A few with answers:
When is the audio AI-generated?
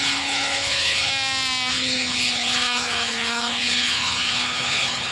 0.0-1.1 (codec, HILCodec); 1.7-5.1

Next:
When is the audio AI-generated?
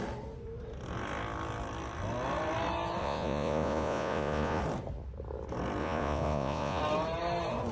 3.0-4.6 (vocoder, Vocos); 5.8-6.8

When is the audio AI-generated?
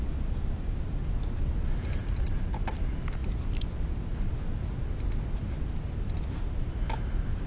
2.0-2.6 (vocoder, BigVGAN v2)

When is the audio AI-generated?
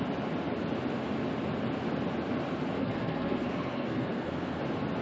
2.8-4.6 (codec, SNAC)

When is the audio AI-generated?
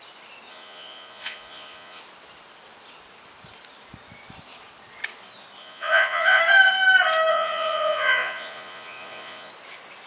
0.5-2.0 (vocoder, Vocos); 5.6-6.4; 7.3-9.5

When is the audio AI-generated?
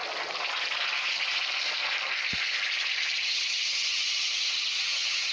3.2-5.3 (vocoder, HiFi-GAN)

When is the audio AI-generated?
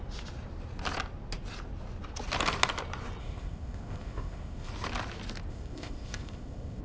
3.2-4.7 (codec, ZipCodec); 5.5-6.8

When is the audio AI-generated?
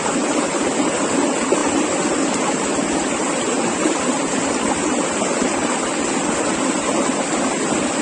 none